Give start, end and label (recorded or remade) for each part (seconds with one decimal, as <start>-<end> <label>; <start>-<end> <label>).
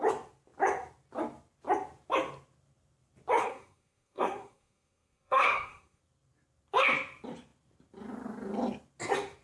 0.0-3.4 recorded; 3.4-6.0 remade; 6.0-9.4 recorded